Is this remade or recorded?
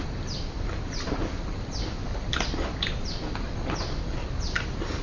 recorded